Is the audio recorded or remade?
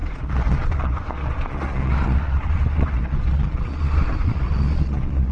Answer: remade